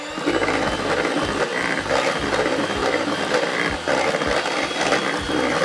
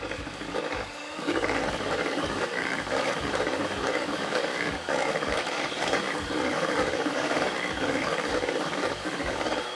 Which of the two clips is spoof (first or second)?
second